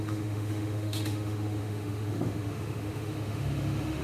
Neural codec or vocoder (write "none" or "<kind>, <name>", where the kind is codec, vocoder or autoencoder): autoencoder, DAC-VAE